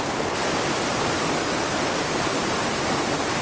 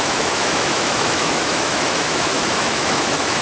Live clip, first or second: first